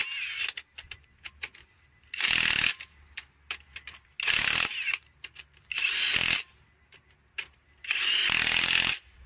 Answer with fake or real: real